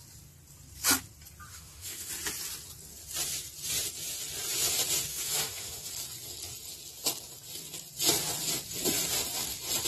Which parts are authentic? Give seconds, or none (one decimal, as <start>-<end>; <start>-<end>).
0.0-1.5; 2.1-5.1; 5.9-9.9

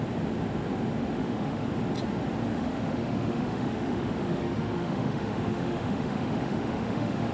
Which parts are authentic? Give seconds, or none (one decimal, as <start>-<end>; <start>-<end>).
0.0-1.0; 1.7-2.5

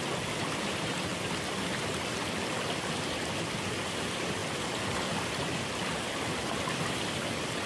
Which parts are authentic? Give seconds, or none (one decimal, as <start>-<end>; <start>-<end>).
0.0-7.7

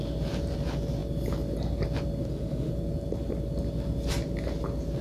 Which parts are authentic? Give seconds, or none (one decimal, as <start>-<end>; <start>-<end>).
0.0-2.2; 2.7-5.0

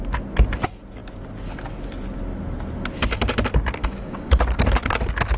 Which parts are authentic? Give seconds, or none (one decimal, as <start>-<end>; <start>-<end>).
0.0-3.8; 4.4-5.4